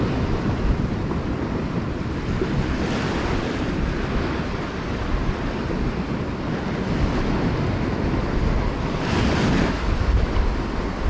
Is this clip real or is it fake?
real